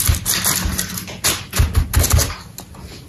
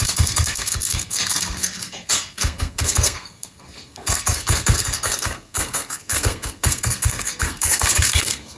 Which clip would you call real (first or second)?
first